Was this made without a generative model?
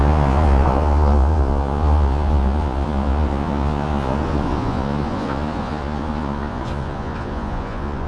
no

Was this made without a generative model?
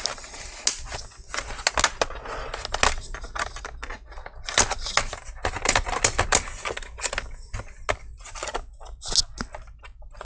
yes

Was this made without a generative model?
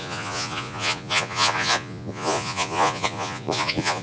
no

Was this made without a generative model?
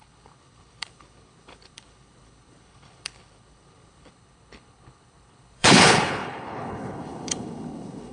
no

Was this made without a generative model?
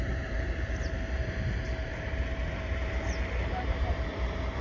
no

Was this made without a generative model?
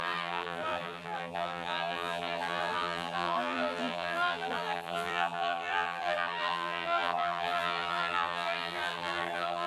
no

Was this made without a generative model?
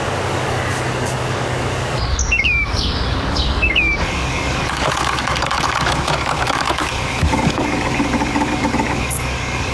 no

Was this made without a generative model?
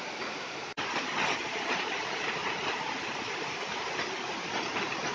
yes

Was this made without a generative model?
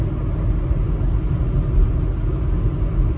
yes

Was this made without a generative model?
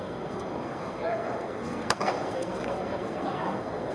no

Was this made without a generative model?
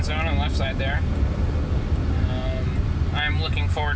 yes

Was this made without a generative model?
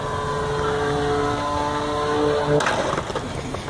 yes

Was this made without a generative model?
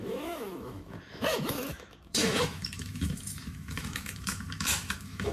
no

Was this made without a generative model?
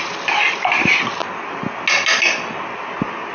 yes